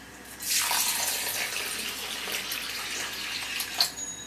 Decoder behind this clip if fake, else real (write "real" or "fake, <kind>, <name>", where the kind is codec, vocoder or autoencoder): real